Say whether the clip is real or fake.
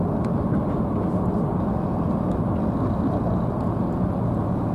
real